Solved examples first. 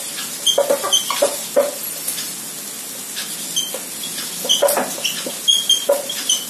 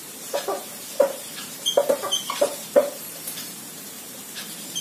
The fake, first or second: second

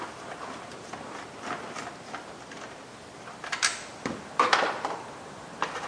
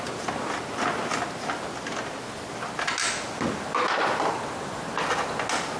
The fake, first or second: first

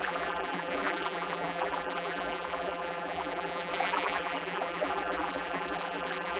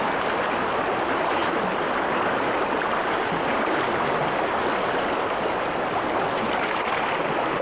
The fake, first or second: first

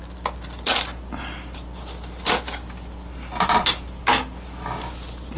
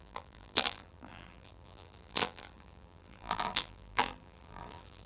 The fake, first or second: second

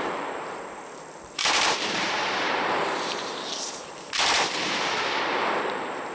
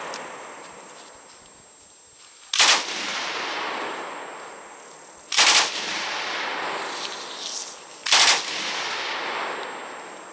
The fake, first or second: first